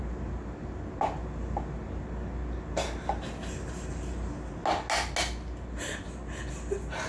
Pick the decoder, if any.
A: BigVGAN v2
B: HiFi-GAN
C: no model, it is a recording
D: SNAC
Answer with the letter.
C